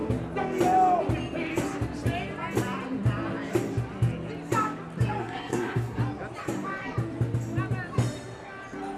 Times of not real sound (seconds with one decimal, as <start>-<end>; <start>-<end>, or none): 5.2-6.0

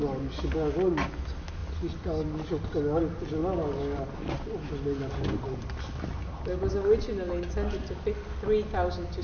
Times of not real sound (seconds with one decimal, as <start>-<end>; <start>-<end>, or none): none

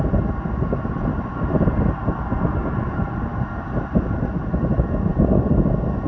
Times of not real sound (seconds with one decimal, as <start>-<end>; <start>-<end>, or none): 1.1-1.7; 2.6-4.4